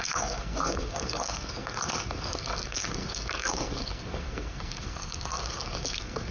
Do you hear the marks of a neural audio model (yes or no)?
yes